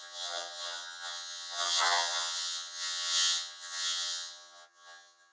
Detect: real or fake fake